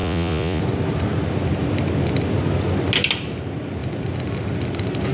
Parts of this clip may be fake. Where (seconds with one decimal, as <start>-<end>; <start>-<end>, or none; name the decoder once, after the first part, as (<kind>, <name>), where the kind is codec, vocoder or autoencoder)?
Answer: 0.0-0.6 (vocoder, Vocos)

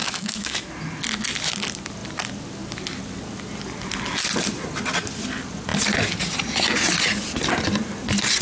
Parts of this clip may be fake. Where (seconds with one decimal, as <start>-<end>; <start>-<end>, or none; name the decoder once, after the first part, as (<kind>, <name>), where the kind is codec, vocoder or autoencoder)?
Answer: 0.0-0.7 (autoencoder, DAC-VAE)

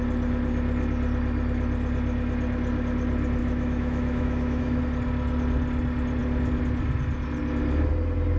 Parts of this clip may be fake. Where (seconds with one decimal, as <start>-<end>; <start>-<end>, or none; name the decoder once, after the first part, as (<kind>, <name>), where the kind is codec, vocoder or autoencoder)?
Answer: 3.4-4.8 (autoencoder, DAC-VAE)

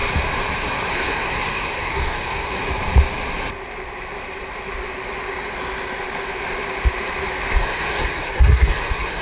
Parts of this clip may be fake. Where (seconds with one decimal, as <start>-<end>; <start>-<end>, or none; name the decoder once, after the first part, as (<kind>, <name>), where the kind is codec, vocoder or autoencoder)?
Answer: 0.9-2.6 (codec, SNAC); 7.6-9.2

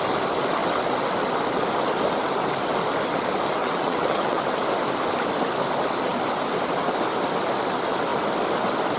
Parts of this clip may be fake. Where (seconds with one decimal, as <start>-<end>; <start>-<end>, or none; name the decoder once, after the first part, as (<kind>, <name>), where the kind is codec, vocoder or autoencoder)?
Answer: 3.6-4.4 (vocoder, WaveNeXt)

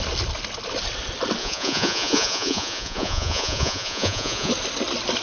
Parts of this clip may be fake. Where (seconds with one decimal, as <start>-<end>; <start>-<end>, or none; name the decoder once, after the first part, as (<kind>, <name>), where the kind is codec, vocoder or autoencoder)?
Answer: 1.4-4.5 (vocoder, Vocos)

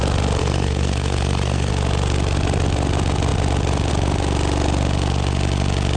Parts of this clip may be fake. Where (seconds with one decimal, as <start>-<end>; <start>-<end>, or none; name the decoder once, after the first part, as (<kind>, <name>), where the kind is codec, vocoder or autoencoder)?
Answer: 0.4-1.7 (codec, SNAC)